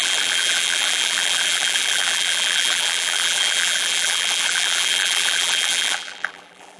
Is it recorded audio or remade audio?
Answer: remade